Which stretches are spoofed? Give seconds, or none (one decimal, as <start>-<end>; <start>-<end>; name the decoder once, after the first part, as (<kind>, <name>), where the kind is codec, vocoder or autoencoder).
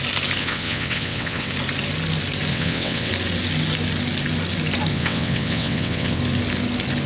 0.4-1.5 (vocoder, WaveNeXt); 2.5-3.1; 4.9-6.2